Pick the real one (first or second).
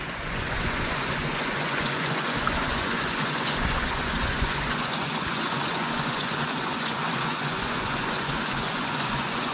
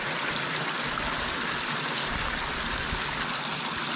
second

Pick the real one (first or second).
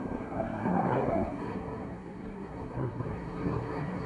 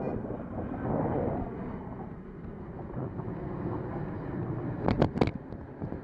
second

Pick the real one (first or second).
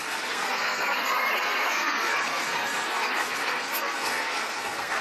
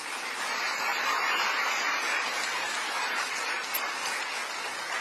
second